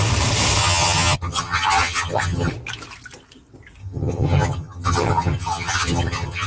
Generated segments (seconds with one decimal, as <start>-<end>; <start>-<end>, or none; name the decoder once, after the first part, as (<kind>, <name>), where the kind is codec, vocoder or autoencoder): 0.6-2.5 (vocoder, HiFi-GAN); 3.8-6.5